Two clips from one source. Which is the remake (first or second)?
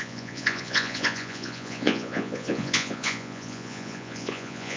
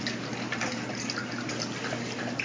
first